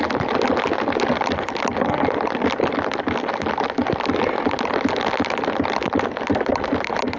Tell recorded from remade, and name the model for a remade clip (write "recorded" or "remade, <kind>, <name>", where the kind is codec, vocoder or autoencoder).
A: recorded